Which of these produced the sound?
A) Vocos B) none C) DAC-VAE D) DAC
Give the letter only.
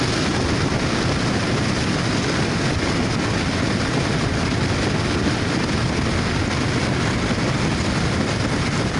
B